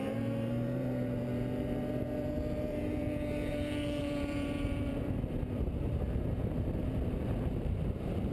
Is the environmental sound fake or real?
fake